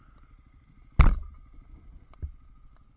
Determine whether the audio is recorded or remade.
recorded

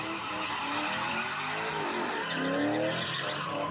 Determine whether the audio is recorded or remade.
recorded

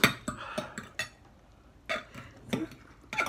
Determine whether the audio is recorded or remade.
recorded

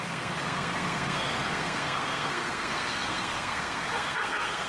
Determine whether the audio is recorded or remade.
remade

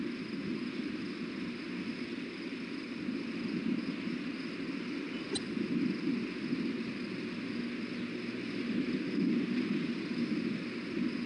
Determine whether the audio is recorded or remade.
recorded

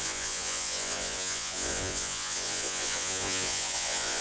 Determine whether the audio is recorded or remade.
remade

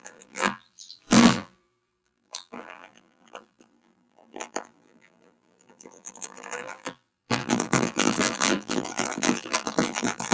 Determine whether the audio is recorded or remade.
remade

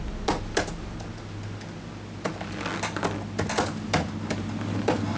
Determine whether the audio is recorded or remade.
recorded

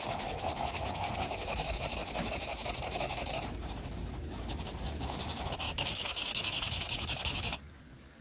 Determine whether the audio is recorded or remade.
remade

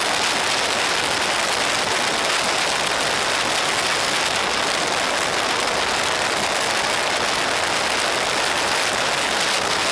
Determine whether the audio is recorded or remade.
recorded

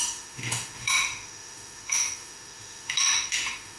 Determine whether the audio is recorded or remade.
remade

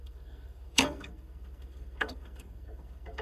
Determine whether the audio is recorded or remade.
remade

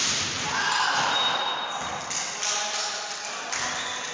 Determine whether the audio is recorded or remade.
recorded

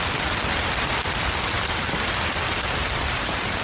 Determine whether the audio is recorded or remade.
recorded